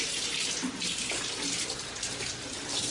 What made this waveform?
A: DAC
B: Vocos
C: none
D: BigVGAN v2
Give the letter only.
C